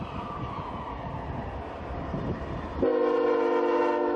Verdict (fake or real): real